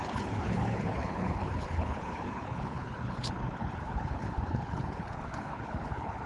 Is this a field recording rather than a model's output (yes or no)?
no